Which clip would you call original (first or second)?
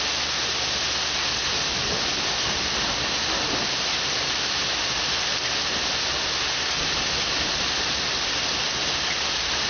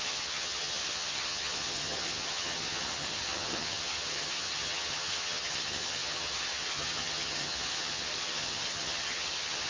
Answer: first